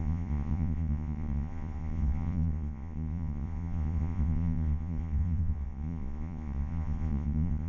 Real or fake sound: fake